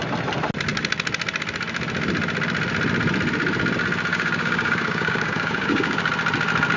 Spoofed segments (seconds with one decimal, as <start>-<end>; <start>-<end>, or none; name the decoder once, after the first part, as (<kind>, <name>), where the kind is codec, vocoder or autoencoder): 4.1-6.1 (codec, DAC)

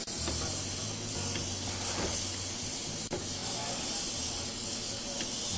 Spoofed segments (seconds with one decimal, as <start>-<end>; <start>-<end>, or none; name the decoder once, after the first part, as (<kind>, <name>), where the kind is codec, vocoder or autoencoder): none

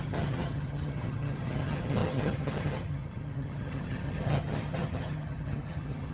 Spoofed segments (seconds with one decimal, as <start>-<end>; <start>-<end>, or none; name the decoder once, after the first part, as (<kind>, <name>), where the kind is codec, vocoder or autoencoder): 0.0-6.1 (vocoder, HiFi-GAN)

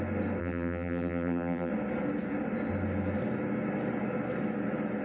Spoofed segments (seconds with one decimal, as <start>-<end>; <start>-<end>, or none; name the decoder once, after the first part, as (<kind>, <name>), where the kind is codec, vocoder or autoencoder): 0.4-1.7 (vocoder, BigVGAN v2)

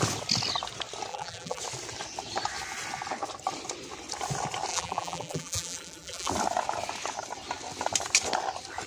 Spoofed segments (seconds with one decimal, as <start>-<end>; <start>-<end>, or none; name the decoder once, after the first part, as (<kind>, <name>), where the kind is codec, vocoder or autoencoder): 1.1-1.6 (vocoder, BigVGAN v2); 4.7-6.3

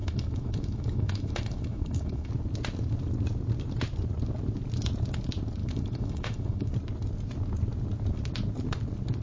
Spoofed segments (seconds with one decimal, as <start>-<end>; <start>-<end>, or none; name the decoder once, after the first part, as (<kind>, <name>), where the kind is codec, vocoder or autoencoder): 0.0-2.3 (autoencoder, DAC-VAE); 5.6-6.7

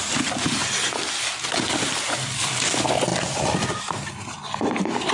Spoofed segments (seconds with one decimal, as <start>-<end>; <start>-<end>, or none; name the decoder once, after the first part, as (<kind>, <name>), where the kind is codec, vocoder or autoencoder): 3.1-3.8 (vocoder, BigVGAN v2)